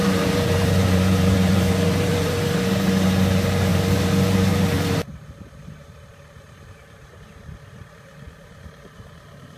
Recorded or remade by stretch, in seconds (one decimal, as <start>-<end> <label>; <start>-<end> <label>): 0.0-9.6 remade